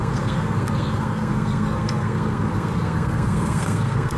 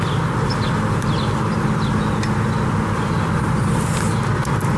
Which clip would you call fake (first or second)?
first